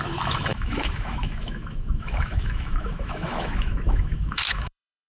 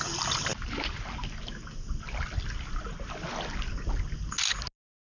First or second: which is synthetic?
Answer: first